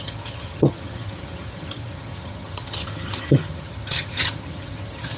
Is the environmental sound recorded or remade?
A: remade